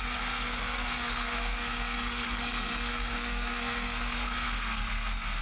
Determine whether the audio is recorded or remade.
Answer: remade